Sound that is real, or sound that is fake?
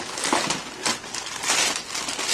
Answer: real